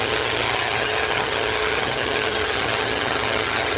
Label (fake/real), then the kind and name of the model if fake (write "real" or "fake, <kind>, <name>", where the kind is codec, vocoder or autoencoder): fake, vocoder, HiFi-GAN